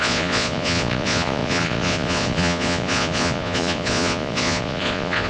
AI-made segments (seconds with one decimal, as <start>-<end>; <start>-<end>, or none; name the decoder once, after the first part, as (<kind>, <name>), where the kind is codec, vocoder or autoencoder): 0.0-5.3 (vocoder, Vocos)

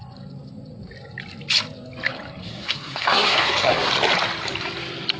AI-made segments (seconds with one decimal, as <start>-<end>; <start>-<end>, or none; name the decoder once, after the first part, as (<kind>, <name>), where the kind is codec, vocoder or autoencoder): 2.4-3.9 (codec, SNAC)

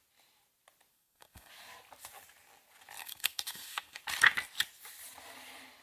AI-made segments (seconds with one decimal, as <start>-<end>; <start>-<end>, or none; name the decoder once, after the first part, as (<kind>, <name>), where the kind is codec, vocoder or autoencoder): 0.9-1.5 (codec, SNAC); 3.0-4.0

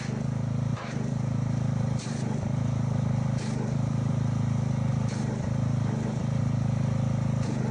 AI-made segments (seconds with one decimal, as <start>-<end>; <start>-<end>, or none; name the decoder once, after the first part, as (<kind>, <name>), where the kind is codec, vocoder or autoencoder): 0.7-4.1 (vocoder, BigVGAN v2); 4.9-6.4

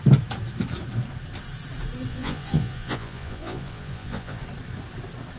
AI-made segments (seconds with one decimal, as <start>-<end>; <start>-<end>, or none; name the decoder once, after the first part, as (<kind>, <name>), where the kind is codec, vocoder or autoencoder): 2.1-4.4 (vocoder, Vocos)

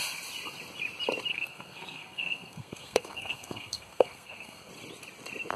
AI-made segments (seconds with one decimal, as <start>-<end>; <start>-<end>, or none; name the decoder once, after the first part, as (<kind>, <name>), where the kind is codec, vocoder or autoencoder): 1.3-4.7 (codec, SNAC)

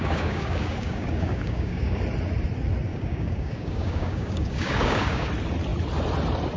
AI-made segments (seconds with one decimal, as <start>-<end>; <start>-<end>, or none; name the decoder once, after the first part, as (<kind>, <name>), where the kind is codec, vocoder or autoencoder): 0.0-2.0 (codec, DAC); 2.9-5.3

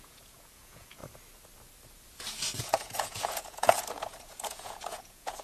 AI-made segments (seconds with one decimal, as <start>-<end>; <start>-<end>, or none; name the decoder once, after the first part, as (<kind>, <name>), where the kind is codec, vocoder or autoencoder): 0.0-1.0 (vocoder, Vocos); 2.6-5.4